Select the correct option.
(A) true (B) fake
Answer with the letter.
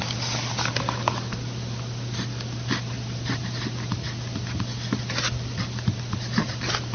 A